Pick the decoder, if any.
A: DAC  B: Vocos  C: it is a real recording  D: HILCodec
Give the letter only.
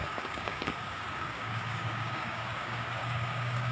A